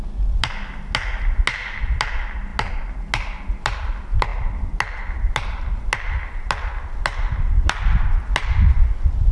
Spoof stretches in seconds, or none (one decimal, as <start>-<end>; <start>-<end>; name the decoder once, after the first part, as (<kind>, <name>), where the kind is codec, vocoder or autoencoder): none